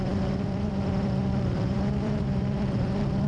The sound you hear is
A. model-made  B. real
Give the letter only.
A